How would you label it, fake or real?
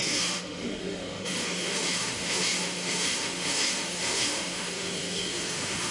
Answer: fake